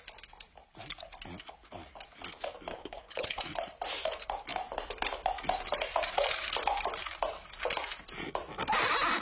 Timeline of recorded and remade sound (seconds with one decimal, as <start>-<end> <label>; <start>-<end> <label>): 0.0-2.7 recorded; 2.7-3.4 remade; 3.4-9.2 recorded